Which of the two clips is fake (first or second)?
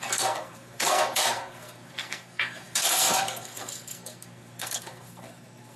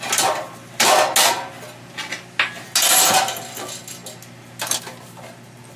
first